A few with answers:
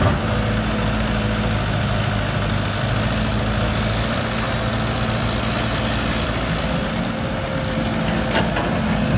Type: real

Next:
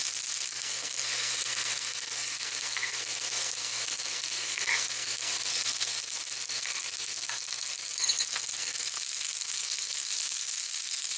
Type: fake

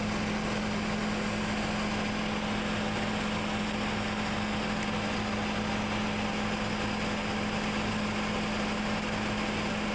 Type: real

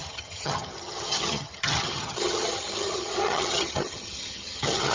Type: fake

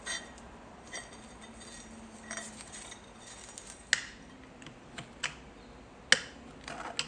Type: real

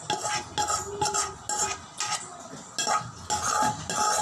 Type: real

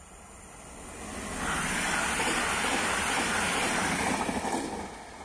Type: real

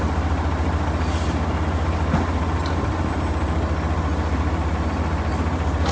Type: real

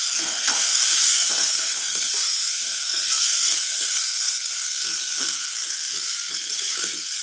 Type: fake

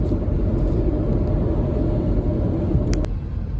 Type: real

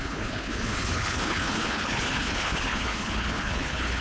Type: fake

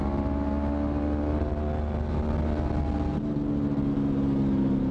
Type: real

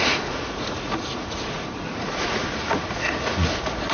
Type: fake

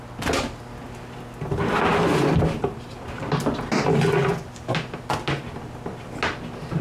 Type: real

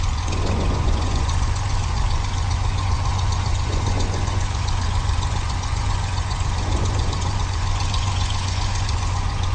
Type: fake